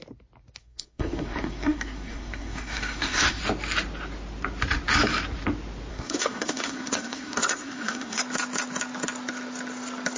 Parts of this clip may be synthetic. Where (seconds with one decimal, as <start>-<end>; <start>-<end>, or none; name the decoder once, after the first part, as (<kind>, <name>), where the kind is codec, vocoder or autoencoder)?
0.6-3.4 (codec, SNAC); 5.9-8.2